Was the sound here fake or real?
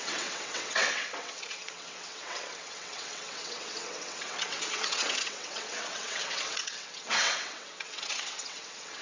fake